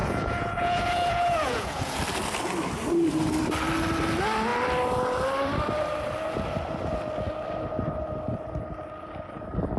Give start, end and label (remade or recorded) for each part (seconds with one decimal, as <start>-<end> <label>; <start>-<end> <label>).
0.0-2.0 remade; 2.0-9.8 recorded